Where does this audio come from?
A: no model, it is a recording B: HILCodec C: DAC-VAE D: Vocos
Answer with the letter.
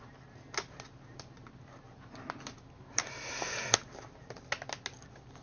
A